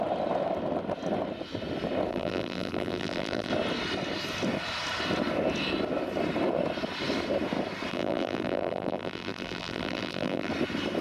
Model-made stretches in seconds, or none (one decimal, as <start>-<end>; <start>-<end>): 2.1-3.5; 7.9-10.5